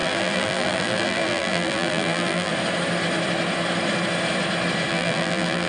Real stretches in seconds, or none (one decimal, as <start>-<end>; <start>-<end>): 2.5-4.9